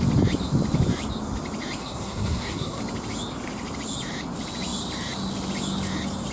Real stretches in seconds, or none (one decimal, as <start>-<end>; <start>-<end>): 0.0-1.8; 2.8-6.3